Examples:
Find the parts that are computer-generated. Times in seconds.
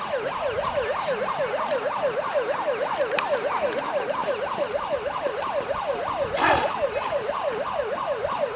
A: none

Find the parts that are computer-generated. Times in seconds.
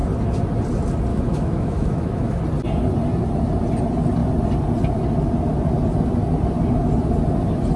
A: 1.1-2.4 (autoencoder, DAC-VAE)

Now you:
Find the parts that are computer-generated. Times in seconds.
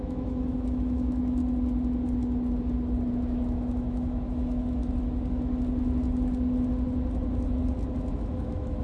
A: 0.0-1.4 (autoencoder, DAC-VAE); 3.1-4.8; 8.1-8.8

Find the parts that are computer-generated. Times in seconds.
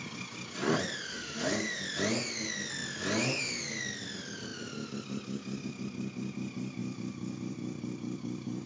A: 1.1-1.8 (autoencoder, DAC-VAE)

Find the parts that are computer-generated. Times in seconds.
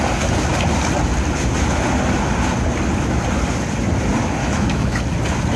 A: 4.4-5.0 (autoencoder, DAC-VAE)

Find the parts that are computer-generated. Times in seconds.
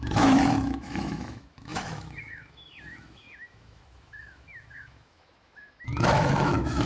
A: 0.0-6.9 (autoencoder, DAC-VAE)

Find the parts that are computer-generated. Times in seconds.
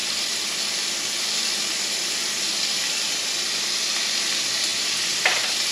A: none